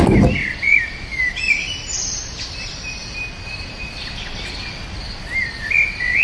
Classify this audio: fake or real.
real